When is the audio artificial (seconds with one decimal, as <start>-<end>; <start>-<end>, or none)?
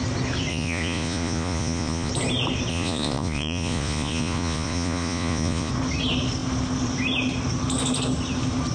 0.5-2.1; 2.7-5.7